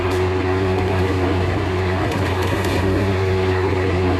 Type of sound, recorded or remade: remade